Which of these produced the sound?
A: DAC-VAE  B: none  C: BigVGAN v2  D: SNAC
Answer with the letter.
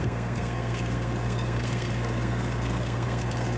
D